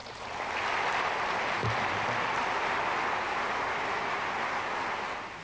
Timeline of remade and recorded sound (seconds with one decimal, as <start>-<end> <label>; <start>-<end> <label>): 0.0-5.4 recorded